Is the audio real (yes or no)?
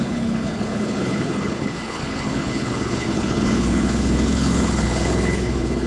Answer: no